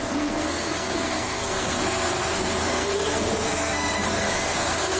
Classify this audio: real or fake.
fake